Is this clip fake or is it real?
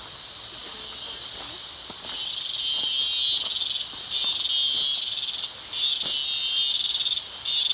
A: real